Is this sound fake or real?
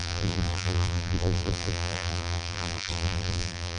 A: fake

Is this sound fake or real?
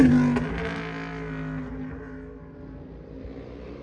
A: real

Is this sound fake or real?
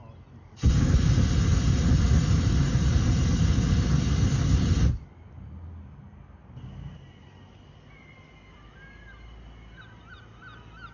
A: real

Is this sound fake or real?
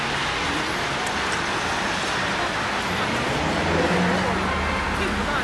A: real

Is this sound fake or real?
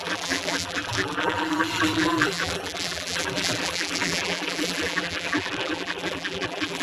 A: fake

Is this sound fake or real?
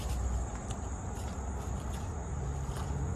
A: real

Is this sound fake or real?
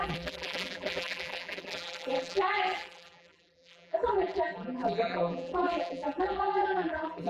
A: fake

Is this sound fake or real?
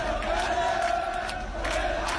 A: real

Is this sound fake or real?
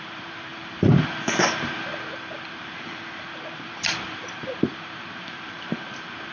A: fake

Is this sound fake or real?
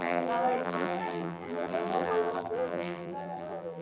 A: fake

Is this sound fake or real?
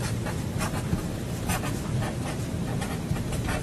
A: fake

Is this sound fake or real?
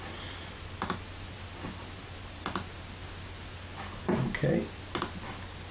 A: real